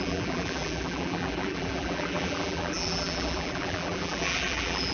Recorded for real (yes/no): no